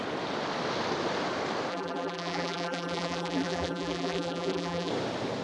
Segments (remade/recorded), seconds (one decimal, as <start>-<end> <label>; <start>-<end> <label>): 0.0-1.7 recorded; 1.7-4.9 remade; 4.9-5.4 recorded